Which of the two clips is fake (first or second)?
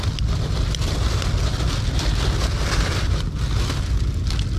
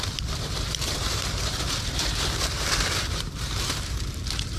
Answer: second